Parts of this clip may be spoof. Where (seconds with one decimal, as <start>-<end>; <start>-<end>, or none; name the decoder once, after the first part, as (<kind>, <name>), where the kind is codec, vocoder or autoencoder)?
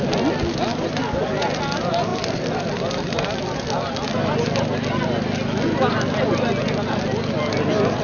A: 2.1-2.6 (vocoder, BigVGAN v2)